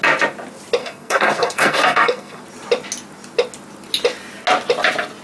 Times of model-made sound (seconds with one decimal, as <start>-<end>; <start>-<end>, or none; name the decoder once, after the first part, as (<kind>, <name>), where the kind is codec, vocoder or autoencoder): 0.8-2.4 (codec, SNAC)